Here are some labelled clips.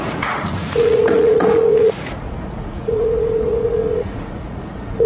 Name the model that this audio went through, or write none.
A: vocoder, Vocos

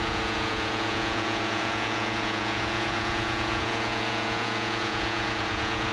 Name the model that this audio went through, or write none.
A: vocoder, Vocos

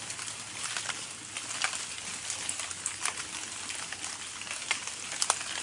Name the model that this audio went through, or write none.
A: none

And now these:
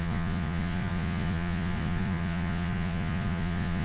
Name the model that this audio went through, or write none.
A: vocoder, Vocos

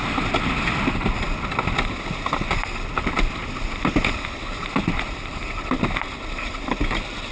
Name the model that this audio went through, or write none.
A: none